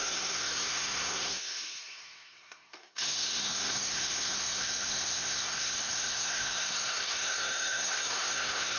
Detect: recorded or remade remade